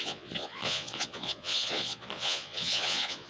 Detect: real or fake fake